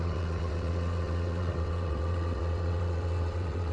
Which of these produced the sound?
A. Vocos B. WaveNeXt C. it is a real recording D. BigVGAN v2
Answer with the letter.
B